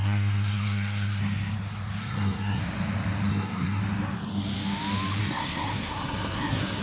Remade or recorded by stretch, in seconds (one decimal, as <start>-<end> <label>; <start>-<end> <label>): 0.0-1.2 remade; 1.2-2.0 recorded; 2.0-2.6 remade; 2.6-3.3 recorded; 3.3-3.8 remade; 3.8-5.2 recorded; 5.2-6.8 remade